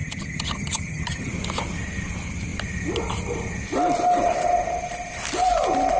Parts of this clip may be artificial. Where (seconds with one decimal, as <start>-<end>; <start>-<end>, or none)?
0.0-1.3